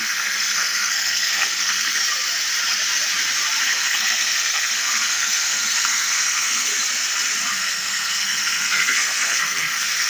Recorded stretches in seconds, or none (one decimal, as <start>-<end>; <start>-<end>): 2.0-3.6; 6.7-7.6